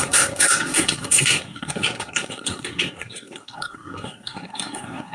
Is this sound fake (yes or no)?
yes